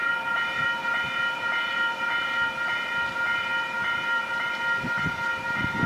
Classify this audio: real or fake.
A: fake